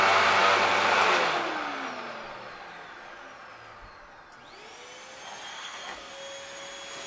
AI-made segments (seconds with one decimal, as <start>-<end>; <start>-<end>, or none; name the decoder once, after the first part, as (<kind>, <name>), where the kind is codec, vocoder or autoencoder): 5.5-6.1 (codec, SNAC)